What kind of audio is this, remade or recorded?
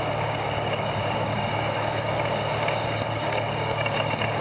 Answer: remade